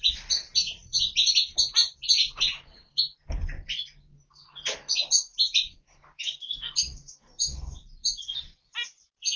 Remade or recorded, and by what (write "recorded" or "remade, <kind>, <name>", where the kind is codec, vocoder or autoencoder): recorded